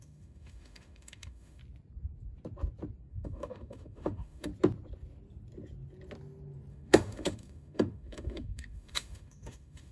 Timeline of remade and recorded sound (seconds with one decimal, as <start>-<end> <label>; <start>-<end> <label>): 0.0-1.6 remade; 1.6-3.1 recorded; 3.1-4.5 remade; 4.5-6.7 recorded; 6.7-9.9 remade